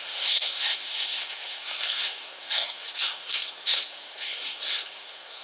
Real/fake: fake